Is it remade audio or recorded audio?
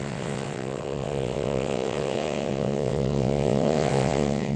remade